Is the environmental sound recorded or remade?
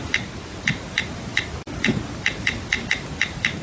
recorded